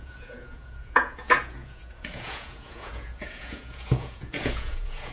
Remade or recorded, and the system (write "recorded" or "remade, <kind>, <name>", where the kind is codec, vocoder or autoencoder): remade, vocoder, Vocos